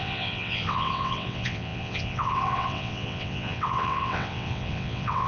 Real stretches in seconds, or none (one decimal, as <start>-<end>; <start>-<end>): none